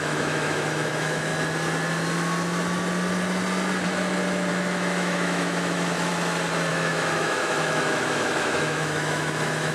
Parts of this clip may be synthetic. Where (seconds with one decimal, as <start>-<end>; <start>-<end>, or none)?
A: 0.0-1.3; 4.5-6.1; 6.7-9.7